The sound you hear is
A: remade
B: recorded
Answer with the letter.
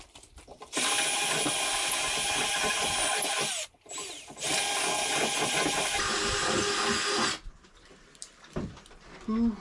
B